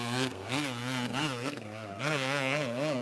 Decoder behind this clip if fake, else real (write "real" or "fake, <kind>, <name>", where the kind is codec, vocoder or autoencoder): fake, codec, SNAC